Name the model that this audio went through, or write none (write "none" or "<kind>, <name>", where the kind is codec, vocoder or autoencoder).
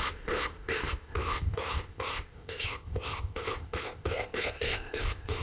codec, ZipCodec